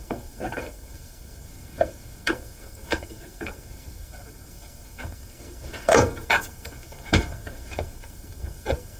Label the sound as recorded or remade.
remade